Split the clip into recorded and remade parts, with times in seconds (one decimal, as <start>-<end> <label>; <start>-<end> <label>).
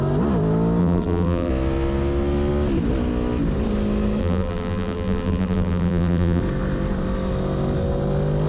0.0-0.8 recorded; 0.8-1.5 remade; 1.5-4.2 recorded; 4.2-6.4 remade; 6.4-8.5 recorded